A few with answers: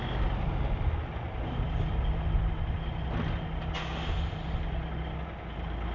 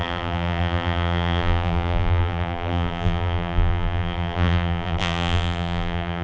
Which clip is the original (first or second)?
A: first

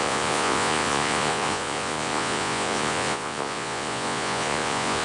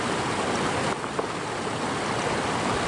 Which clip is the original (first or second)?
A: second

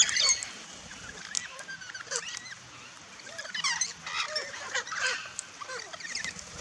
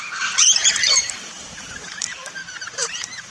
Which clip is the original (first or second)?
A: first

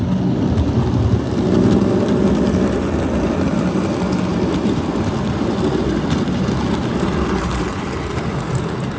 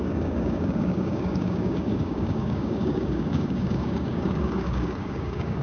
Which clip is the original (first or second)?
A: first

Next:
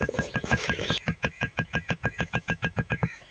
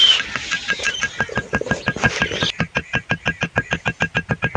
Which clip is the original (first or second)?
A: second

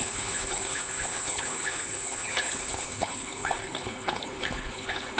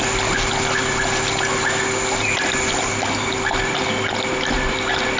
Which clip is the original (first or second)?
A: second